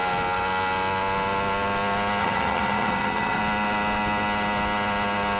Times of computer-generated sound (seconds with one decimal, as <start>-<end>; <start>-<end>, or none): 2.2-3.4